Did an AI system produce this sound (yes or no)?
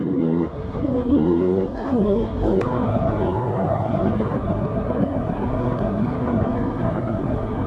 yes